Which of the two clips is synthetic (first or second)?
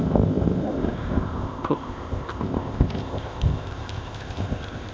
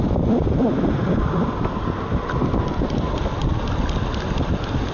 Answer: first